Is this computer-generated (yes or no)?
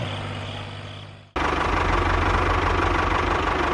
no